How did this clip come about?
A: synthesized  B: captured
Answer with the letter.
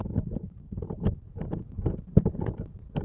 B